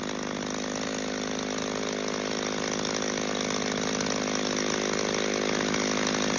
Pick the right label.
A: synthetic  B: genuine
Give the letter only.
B